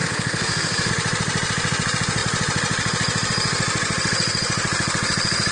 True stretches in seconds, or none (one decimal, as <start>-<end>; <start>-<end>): 0.9-5.5